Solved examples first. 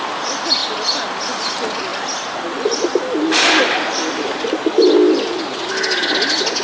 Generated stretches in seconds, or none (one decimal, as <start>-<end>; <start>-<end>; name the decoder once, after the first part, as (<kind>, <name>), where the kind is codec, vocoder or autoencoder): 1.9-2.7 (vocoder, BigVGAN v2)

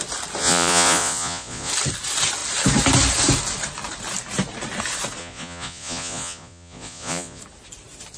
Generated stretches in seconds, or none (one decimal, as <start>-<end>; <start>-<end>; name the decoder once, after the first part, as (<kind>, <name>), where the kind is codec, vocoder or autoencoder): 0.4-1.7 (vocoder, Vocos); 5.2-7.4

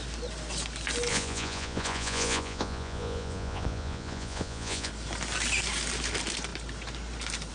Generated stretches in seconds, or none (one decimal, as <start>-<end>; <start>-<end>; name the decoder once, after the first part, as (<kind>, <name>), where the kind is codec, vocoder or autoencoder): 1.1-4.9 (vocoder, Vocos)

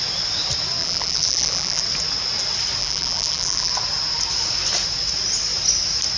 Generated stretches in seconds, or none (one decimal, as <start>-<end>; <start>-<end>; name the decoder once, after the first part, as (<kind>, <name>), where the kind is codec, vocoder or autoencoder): 0.8-1.8 (vocoder, BigVGAN v2); 2.8-3.7